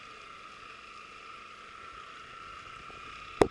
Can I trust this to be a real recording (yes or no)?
yes